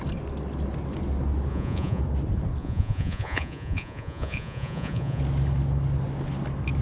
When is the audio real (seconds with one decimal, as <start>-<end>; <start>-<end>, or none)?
0.0-1.5; 2.0-2.6; 5.2-6.8